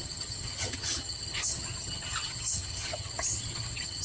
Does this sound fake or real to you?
fake